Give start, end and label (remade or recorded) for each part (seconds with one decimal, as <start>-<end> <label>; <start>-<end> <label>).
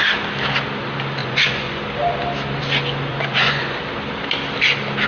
0.0-1.2 recorded; 1.2-1.8 remade; 1.8-3.1 recorded; 3.1-3.8 remade; 3.8-5.1 recorded